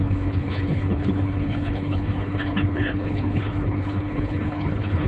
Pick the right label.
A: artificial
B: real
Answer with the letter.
A